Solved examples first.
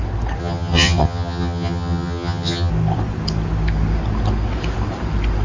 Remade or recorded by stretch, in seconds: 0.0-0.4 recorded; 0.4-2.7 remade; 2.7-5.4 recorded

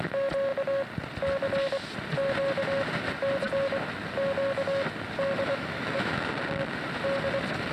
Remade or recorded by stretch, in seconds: 0.0-5.5 recorded; 5.5-6.3 remade; 6.3-7.7 recorded

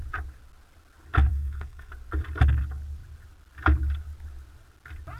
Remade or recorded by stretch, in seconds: 0.0-1.3 recorded; 1.3-1.9 remade; 1.9-5.2 recorded

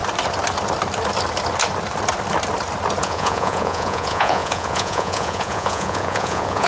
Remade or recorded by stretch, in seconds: 0.0-3.0 recorded; 3.0-6.7 remade

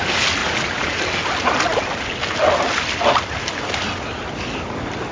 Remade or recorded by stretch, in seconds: 0.0-0.4 recorded; 0.4-1.0 remade; 1.0-5.1 recorded